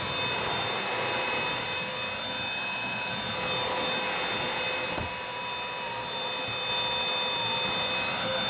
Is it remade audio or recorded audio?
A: recorded